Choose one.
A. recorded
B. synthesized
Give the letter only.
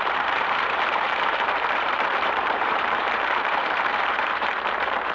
B